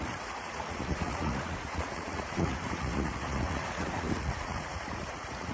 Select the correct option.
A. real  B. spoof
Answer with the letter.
B